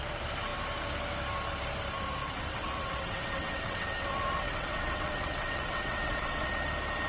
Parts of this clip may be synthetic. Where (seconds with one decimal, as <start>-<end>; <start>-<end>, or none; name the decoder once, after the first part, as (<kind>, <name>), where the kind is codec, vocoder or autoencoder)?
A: 2.2-6.5 (vocoder, WaveNeXt)

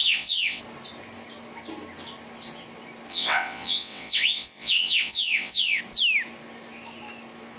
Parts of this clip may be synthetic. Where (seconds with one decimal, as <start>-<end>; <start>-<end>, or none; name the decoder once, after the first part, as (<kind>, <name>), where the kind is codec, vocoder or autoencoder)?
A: 0.0-0.6 (vocoder, WaveNeXt); 3.1-5.8

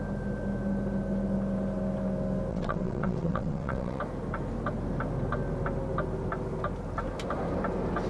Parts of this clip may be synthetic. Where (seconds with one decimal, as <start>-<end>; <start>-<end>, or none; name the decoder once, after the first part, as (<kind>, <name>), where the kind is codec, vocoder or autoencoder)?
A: 2.5-4.0 (vocoder, WaveNeXt)

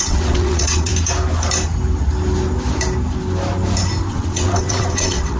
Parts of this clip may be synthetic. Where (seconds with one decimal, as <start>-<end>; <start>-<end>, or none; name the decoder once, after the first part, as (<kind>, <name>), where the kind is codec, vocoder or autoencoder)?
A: 0.0-0.9 (vocoder, WaveNeXt); 4.1-5.4

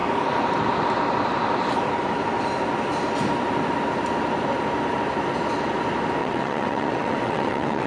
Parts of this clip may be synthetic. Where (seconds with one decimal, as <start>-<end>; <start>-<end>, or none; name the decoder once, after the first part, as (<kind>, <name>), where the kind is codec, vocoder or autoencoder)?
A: 6.2-7.9 (vocoder, WaveNeXt)

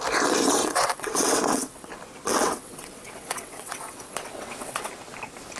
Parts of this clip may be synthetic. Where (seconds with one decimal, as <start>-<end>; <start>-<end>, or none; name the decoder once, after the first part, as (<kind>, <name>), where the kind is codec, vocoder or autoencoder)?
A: 0.6-1.9 (vocoder, WaveNeXt); 2.3-4.9

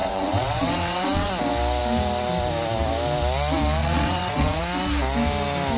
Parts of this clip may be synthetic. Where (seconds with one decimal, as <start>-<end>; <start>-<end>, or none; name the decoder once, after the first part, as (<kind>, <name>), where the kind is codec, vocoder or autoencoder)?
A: 0.0-1.3 (vocoder, WaveNeXt); 3.8-4.6

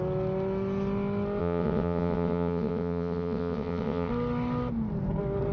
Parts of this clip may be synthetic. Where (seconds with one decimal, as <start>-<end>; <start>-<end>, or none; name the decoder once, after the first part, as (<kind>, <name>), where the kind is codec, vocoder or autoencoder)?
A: 1.4-4.1 (vocoder, WaveNeXt)